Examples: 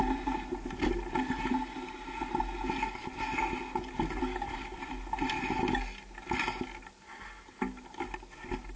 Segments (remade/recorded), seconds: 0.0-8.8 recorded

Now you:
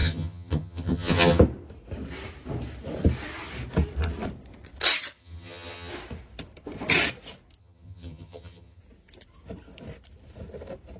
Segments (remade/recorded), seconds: 0.0-1.4 remade; 1.4-5.2 recorded; 5.2-5.9 remade; 5.9-7.6 recorded; 7.6-8.8 remade; 8.8-11.0 recorded

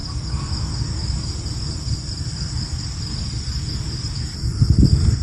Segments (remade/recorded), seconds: 0.0-1.5 recorded; 1.5-5.2 remade

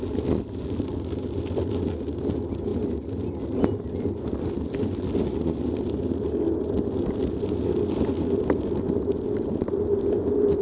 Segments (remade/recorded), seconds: 0.0-10.6 recorded

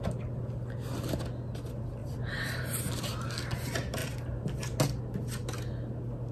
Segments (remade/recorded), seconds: 0.0-2.0 recorded; 2.0-2.6 remade; 2.6-6.3 recorded